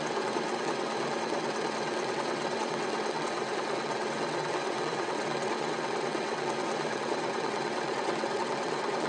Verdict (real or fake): fake